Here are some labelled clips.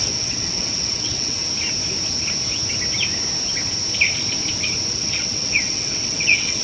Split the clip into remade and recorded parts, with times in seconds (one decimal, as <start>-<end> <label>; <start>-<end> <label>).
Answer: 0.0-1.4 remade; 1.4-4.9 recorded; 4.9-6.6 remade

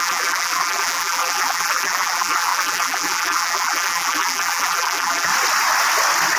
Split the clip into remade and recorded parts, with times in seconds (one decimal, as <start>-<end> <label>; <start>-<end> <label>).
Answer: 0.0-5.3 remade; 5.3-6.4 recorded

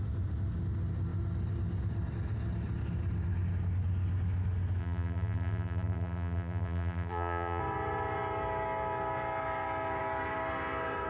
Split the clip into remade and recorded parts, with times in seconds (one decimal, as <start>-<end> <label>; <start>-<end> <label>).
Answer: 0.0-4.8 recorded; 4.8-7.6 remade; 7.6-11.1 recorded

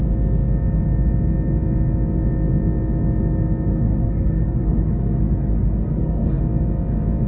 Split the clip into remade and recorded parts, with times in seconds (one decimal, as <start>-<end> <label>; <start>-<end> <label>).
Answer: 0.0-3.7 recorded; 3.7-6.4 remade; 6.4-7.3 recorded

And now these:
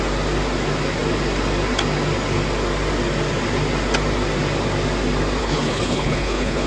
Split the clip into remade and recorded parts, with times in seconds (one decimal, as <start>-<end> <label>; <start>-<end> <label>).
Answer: 0.0-5.4 recorded; 5.4-6.7 remade

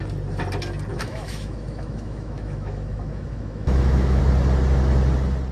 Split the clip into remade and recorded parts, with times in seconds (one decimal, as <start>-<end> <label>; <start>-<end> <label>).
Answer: 0.0-0.9 recorded; 0.9-4.2 remade; 4.2-5.5 recorded

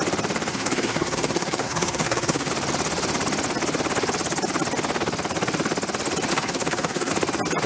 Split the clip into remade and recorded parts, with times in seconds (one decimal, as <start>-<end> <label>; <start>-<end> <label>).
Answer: 0.0-0.5 recorded; 0.5-2.5 remade; 2.5-6.3 recorded; 6.3-7.1 remade; 7.1-7.7 recorded